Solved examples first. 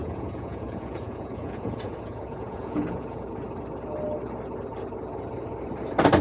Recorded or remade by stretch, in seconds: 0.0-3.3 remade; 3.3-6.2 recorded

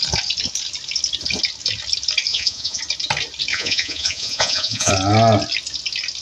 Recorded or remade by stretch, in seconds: 0.0-2.3 recorded; 2.3-2.8 remade; 2.8-3.5 recorded; 3.5-4.9 remade; 4.9-6.2 recorded

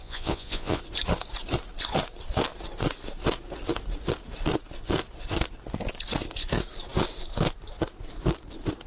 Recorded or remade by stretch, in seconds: 0.0-0.8 remade; 0.8-8.9 recorded

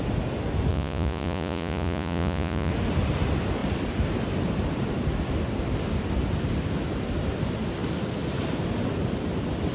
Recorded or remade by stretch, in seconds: 0.0-0.7 recorded; 0.7-2.7 remade; 2.7-9.7 recorded

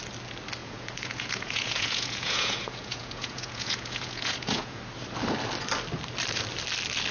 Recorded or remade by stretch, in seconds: 0.0-0.6 recorded; 0.6-4.8 remade; 4.8-7.1 recorded

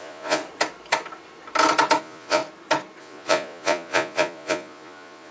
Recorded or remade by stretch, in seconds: 0.0-0.4 remade; 0.4-2.0 recorded; 2.0-2.4 remade; 2.4-3.0 recorded; 3.0-5.3 remade

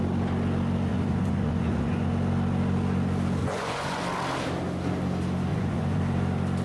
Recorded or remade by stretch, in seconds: 0.0-0.9 recorded; 0.9-2.1 remade; 2.1-3.4 recorded; 3.4-4.0 remade; 4.0-5.5 recorded; 5.5-6.0 remade; 6.0-6.6 recorded